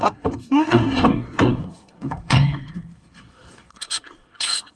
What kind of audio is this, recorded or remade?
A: remade